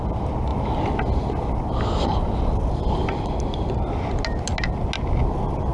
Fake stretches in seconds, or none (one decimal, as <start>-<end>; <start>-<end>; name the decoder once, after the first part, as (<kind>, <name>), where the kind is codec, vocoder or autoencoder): none